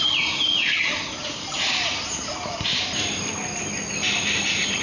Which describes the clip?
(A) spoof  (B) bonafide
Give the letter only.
B